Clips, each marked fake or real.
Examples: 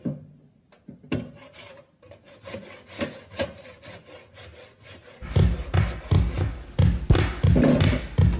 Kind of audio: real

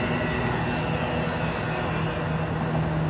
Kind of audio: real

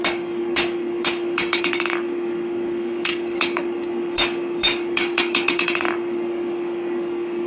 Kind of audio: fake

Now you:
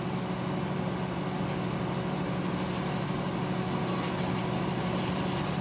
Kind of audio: real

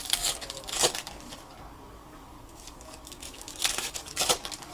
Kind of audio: fake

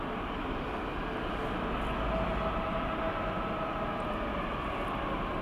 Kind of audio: real